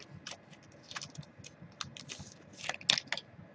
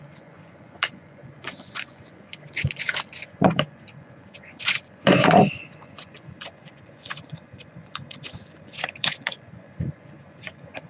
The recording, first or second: first